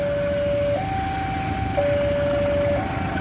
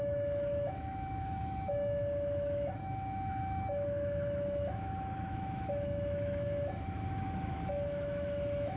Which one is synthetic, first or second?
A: second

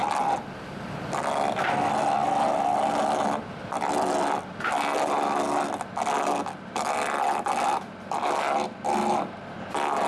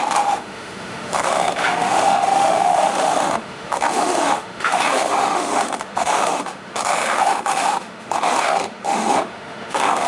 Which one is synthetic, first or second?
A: second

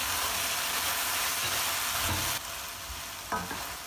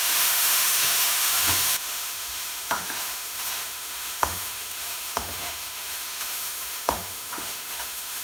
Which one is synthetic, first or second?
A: second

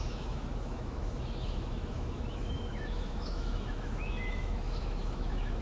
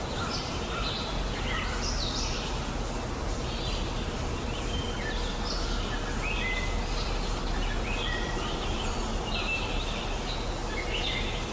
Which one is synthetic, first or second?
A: first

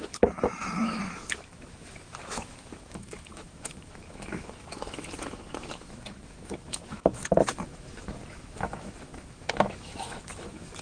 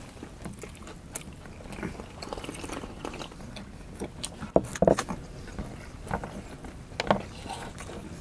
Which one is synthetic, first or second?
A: first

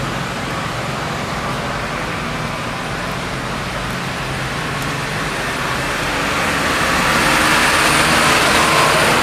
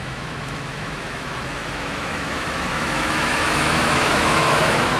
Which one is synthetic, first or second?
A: second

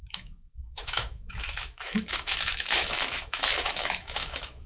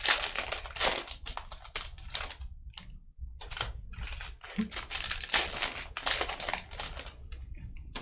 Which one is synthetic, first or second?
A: first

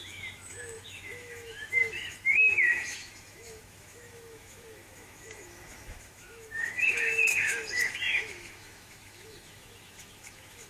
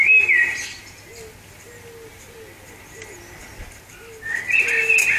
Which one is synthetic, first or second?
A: first